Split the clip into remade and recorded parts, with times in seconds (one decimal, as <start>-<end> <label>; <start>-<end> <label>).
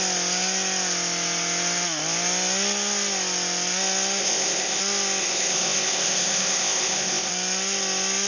0.0-4.2 recorded; 4.2-4.8 remade; 4.8-5.2 recorded; 5.2-7.3 remade; 7.3-8.3 recorded